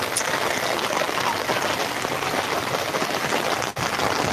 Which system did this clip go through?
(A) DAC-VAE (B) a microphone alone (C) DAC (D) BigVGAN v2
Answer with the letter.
B